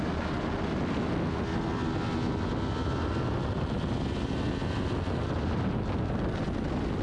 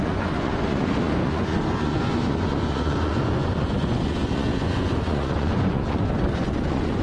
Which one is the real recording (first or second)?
first